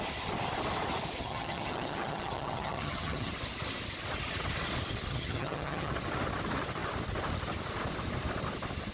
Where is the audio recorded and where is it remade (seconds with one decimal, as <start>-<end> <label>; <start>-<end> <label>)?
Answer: 0.0-1.2 recorded; 1.2-3.3 remade; 3.3-5.1 recorded; 5.1-5.9 remade; 5.9-8.9 recorded